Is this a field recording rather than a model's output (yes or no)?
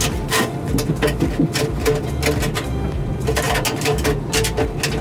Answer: yes